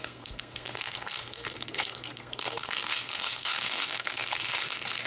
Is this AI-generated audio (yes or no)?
yes